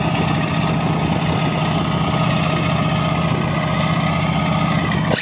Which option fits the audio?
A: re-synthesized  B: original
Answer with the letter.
B